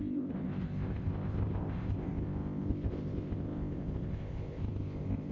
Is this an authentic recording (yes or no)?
no